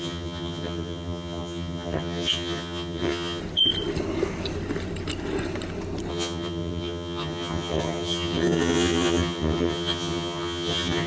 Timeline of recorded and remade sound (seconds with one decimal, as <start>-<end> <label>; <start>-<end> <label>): 0.0-3.4 remade; 3.4-6.1 recorded; 6.1-11.1 remade